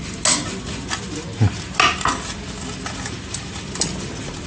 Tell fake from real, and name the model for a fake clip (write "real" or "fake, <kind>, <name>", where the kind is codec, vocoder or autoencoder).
real